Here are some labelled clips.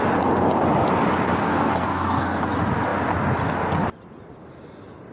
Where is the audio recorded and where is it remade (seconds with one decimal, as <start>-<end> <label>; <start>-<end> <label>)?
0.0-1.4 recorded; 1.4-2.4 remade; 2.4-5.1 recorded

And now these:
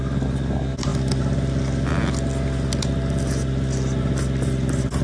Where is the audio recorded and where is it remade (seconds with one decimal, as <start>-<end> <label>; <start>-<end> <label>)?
0.0-5.0 recorded

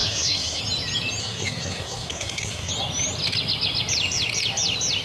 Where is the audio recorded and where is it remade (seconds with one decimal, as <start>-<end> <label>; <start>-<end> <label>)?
0.0-0.6 remade; 0.6-1.2 recorded; 1.2-2.7 remade; 2.7-5.0 recorded

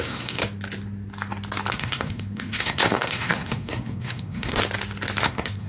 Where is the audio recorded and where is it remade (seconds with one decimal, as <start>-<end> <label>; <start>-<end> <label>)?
0.0-0.4 remade; 0.4-1.7 recorded; 1.7-4.6 remade; 4.6-5.2 recorded; 5.2-5.7 remade

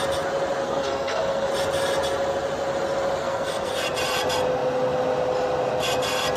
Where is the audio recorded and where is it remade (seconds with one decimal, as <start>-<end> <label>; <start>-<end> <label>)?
0.0-0.6 recorded; 0.6-1.5 remade; 1.5-3.2 recorded; 3.2-3.7 remade; 3.7-6.4 recorded

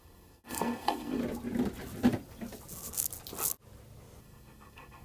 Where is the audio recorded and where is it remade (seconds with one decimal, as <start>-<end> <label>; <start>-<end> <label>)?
0.0-1.2 remade; 1.2-4.2 recorded; 4.2-5.0 remade

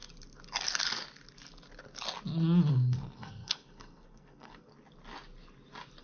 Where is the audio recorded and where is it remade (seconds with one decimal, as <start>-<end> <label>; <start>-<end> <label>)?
0.0-2.7 recorded; 2.7-4.7 remade; 4.7-6.0 recorded